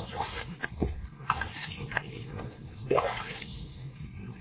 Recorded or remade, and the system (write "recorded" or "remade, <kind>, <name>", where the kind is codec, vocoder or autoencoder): remade, codec, SNAC